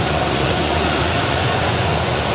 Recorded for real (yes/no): no